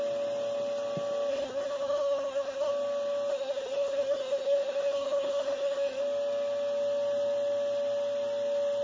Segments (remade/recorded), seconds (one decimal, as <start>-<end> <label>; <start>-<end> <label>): 0.0-1.3 recorded; 1.3-2.7 remade; 2.7-3.3 recorded; 3.3-6.0 remade; 6.0-8.8 recorded